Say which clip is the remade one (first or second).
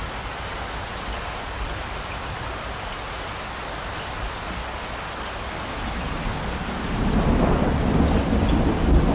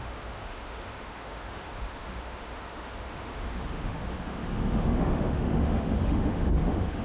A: second